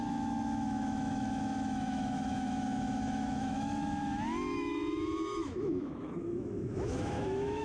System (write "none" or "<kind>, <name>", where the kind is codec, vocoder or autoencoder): autoencoder, DAC-VAE